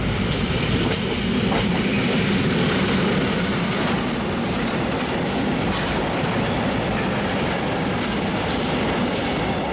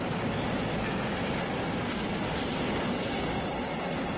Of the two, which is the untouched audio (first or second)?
second